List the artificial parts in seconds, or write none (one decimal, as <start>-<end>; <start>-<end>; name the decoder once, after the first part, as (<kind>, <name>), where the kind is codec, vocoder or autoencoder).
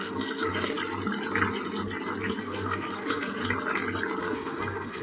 0.0-0.5 (codec, SNAC); 2.4-3.4; 4.2-5.0